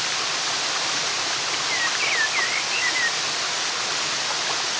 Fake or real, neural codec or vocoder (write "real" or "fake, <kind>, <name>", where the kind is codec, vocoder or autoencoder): real